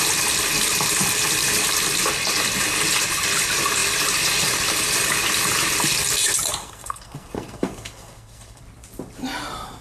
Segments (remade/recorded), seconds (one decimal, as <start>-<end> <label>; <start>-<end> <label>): 0.0-6.6 recorded; 6.6-8.6 remade; 8.6-9.8 recorded